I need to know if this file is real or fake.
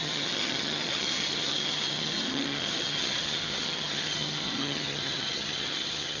fake